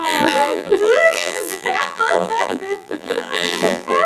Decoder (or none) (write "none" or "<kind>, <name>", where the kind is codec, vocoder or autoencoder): vocoder, BigVGAN v2